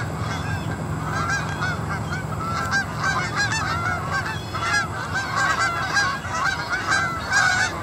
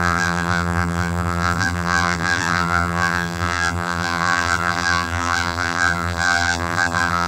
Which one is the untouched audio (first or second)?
first